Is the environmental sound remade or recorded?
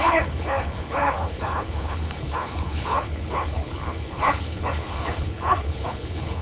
remade